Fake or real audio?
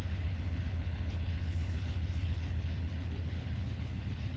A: fake